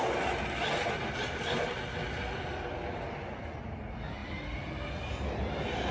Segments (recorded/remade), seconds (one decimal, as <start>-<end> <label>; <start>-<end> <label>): 0.0-5.9 recorded